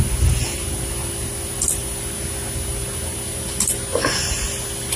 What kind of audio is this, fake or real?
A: real